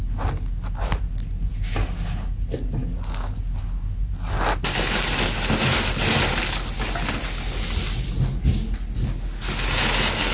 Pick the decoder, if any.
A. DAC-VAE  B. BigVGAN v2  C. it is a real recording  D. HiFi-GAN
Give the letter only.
C